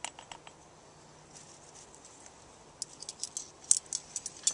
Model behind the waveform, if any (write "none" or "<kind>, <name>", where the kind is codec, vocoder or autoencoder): none